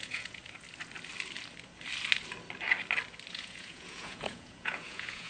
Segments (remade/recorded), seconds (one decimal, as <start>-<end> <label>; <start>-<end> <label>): 0.0-0.4 remade; 0.4-3.3 recorded; 3.3-5.3 remade